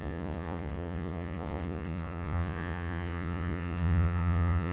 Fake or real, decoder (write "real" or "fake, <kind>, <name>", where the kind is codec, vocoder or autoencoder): fake, vocoder, Vocos